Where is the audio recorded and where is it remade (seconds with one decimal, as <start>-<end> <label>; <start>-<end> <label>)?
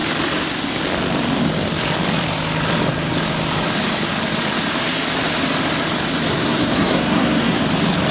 0.0-6.3 recorded; 6.3-7.6 remade; 7.6-8.1 recorded